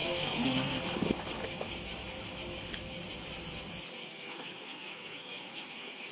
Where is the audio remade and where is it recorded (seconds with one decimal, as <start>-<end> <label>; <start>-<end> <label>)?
0.0-0.8 remade; 0.8-4.1 recorded; 4.1-6.1 remade

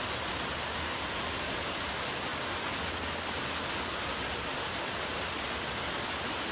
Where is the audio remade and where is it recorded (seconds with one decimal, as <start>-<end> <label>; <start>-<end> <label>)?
0.0-6.5 recorded

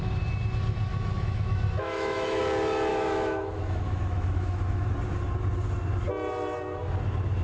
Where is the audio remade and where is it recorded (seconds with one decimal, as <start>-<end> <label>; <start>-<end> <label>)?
0.0-0.9 recorded; 0.9-2.4 remade; 2.4-2.9 recorded; 2.9-4.9 remade; 4.9-7.4 recorded

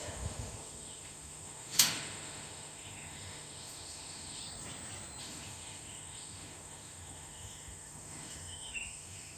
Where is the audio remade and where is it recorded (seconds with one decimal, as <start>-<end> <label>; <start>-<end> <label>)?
0.0-4.4 remade; 4.4-5.2 recorded; 5.2-9.4 remade